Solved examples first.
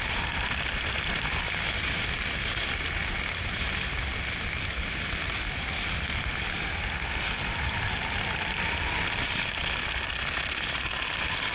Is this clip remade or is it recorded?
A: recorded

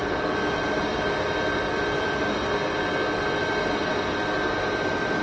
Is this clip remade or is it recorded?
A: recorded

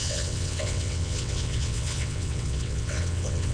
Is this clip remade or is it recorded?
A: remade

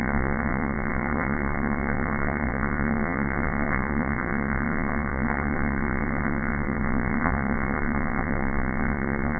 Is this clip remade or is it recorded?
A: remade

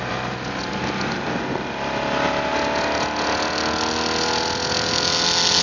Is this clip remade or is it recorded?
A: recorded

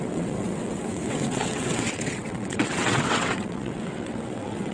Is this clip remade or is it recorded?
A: remade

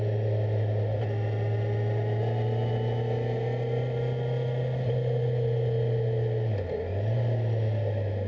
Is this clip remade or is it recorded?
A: recorded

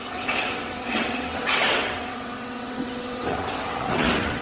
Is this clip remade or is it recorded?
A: remade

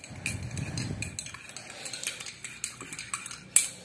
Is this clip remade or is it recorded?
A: recorded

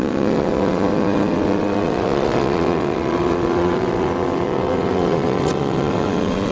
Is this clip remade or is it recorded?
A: remade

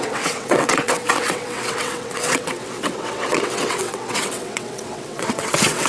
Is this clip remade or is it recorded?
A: remade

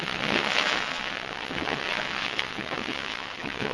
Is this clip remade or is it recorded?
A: remade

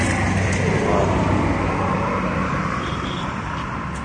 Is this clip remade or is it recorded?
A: recorded